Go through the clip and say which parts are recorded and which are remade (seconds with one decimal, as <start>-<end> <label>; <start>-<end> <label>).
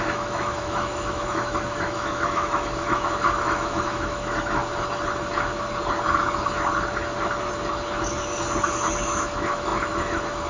0.0-4.6 remade; 4.6-9.0 recorded; 9.0-10.5 remade